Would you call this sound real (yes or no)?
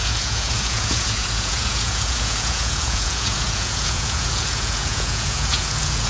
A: no